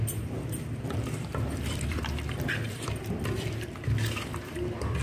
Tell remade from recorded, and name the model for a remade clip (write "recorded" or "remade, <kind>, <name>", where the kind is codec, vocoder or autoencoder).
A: remade, vocoder, BigVGAN v2